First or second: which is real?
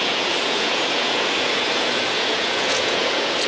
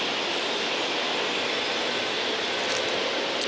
second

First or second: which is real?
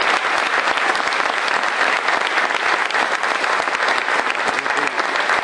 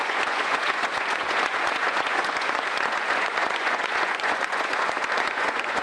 first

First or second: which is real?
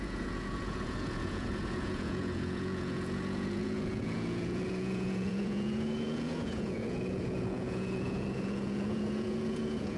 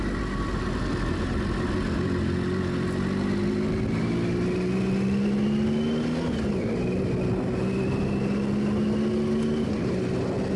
second